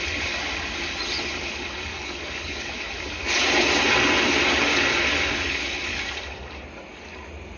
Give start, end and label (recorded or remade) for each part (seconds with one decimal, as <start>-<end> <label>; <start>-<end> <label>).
0.0-1.9 recorded; 1.9-2.7 remade; 2.7-7.6 recorded